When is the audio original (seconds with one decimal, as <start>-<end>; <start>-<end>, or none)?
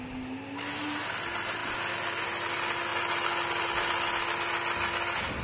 0.0-5.4